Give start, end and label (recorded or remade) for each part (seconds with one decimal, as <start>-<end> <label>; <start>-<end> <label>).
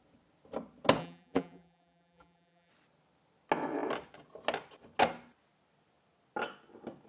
0.0-1.0 recorded; 1.0-2.7 remade; 2.7-7.1 recorded